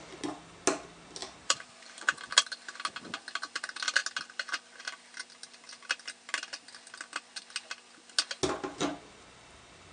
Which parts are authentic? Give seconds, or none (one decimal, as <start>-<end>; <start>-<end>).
0.0-1.2; 2.2-9.9